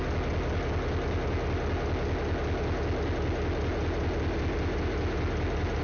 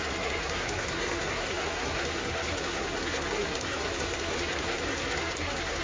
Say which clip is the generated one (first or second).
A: second